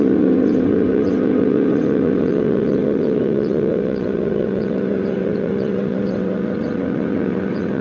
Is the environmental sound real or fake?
fake